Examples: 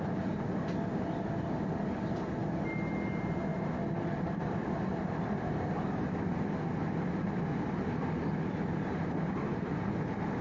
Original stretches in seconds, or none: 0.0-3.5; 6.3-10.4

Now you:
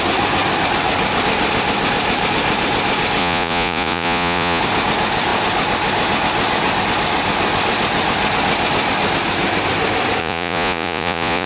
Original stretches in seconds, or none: 0.0-3.2; 4.6-10.2

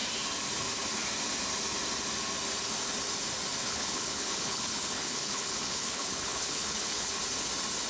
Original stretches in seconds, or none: 0.0-3.6; 7.2-7.9

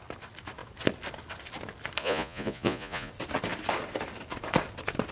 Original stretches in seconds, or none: 0.0-2.0; 3.1-5.1

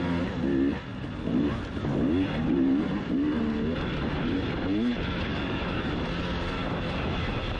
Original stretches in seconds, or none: 0.0-5.3; 5.9-7.6

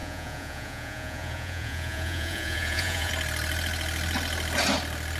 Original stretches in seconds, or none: 3.1-5.2

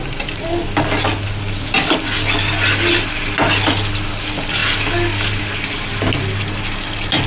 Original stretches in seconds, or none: 0.0-7.3